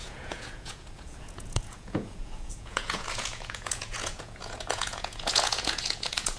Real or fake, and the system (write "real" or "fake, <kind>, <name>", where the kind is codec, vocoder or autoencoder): fake, vocoder, Vocos